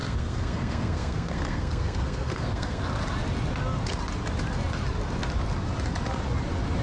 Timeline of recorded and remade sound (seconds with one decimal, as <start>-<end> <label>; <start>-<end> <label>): 0.0-2.8 remade; 2.8-6.8 recorded